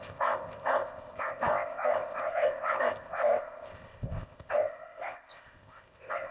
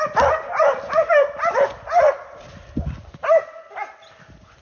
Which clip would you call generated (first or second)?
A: first